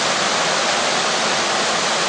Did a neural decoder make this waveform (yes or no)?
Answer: no